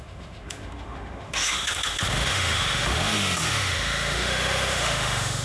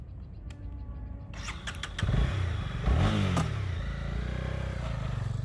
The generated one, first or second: first